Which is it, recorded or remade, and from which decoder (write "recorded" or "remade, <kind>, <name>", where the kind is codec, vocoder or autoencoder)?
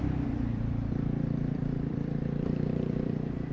remade, vocoder, BigVGAN v2